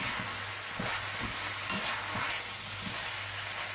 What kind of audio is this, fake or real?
real